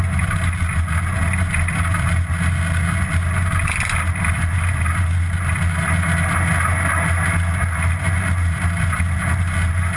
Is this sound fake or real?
real